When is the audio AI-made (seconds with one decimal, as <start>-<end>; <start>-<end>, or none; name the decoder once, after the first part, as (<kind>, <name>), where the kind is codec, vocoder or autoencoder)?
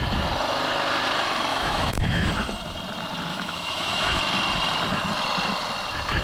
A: 1.5-2.3 (autoencoder, DAC-VAE); 3.3-4.2